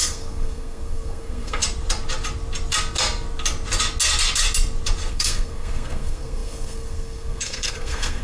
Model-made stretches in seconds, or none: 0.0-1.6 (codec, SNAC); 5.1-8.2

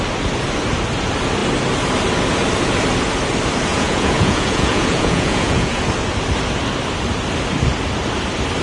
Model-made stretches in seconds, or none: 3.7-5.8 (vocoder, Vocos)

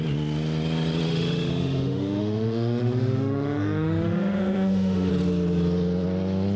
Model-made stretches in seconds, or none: 1.1-5.1 (autoencoder, DAC-VAE)

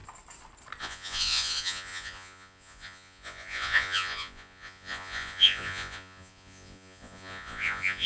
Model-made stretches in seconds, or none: 0.8-8.1 (vocoder, Vocos)

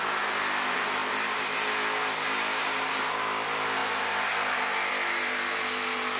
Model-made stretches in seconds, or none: none

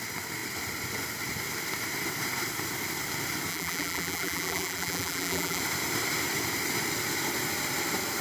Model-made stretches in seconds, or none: 3.5-5.6 (vocoder, BigVGAN v2)